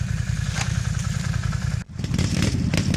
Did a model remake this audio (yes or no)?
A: yes